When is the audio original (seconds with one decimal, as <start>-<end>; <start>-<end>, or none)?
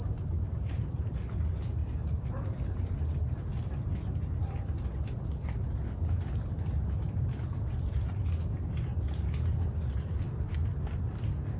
0.0-11.6